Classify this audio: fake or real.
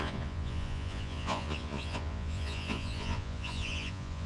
fake